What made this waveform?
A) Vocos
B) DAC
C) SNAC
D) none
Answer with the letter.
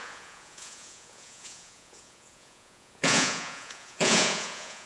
A